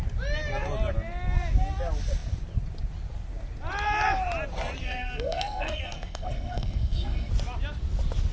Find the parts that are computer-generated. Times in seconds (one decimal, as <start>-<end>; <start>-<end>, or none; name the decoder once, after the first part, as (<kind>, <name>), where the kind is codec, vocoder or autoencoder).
4.8-7.3 (codec, SNAC)